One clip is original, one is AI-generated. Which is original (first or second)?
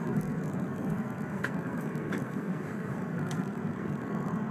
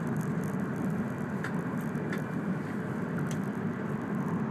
second